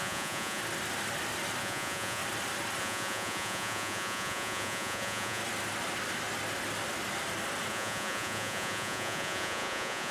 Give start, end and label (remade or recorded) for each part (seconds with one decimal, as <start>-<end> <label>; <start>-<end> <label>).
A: 0.0-0.6 remade; 0.6-1.6 recorded; 1.6-2.2 remade; 2.2-2.8 recorded; 2.8-5.4 remade; 5.4-7.7 recorded; 7.7-10.1 remade